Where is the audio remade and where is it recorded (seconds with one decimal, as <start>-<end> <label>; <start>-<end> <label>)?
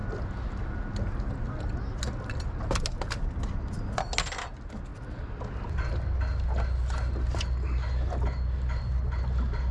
0.0-9.7 recorded